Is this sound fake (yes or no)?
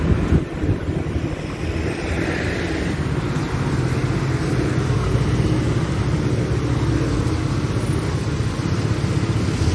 no